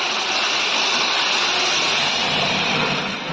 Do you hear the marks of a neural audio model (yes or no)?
no